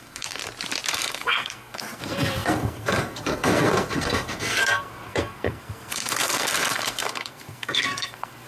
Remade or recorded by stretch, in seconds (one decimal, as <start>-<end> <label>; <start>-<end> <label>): 0.0-0.4 remade; 0.4-0.9 recorded; 0.9-8.5 remade